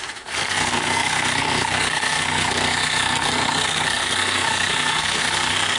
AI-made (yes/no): yes